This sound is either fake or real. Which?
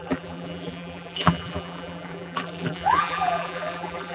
fake